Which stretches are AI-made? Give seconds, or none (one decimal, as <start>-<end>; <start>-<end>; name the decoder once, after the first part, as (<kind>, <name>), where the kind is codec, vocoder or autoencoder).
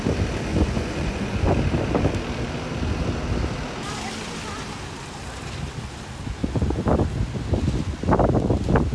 0.5-1.5 (vocoder, Vocos)